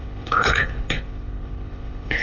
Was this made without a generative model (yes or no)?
no